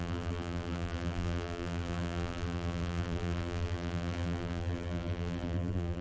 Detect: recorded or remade remade